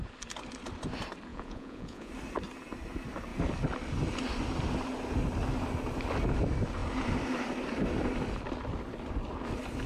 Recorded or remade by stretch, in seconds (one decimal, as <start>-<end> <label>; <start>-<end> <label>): 0.0-1.3 recorded; 1.3-2.1 remade; 2.1-9.9 recorded